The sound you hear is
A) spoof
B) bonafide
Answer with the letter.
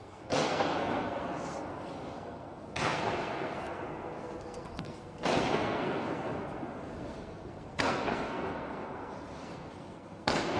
A